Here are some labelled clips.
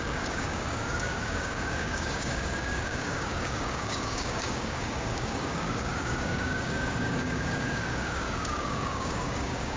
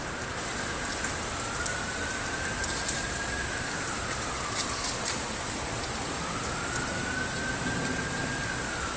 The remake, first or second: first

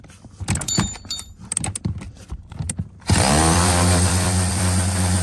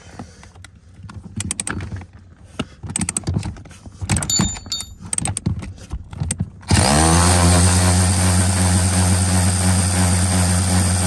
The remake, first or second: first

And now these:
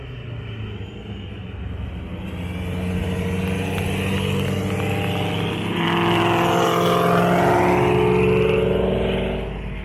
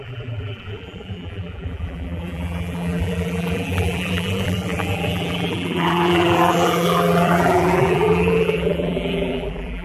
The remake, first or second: second